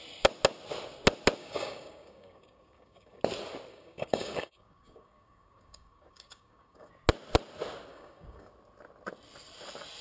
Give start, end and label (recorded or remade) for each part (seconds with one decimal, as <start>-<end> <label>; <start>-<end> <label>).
0.0-1.4 recorded; 1.4-3.2 remade; 3.2-3.7 recorded; 3.7-6.9 remade; 6.9-7.9 recorded; 7.9-8.5 remade; 8.5-10.0 recorded